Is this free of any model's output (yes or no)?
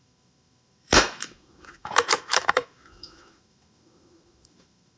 no